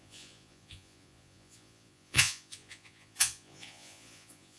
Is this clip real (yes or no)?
no